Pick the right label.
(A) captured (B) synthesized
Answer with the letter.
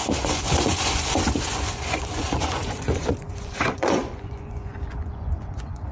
B